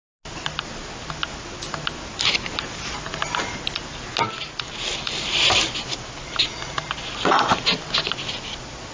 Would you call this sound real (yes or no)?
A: yes